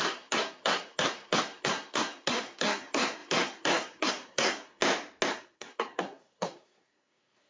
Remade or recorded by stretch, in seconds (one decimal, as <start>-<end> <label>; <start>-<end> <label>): 0.0-4.8 remade; 4.8-5.3 recorded; 5.3-7.5 remade